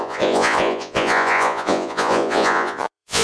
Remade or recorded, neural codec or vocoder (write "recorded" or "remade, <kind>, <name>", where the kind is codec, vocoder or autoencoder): remade, vocoder, Vocos